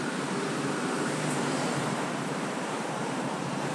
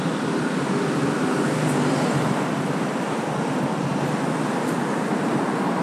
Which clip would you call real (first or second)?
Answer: second